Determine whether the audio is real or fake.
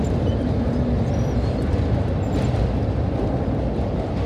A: real